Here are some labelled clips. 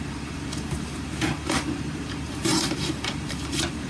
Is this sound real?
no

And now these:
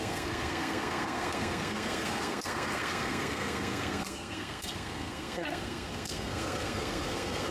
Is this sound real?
no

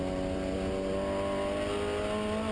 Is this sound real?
yes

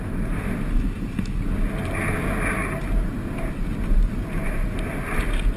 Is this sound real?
yes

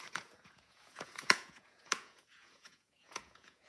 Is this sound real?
no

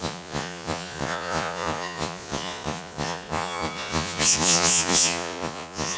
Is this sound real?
no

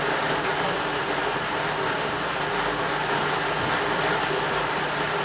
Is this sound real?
yes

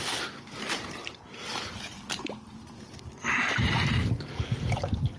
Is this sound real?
no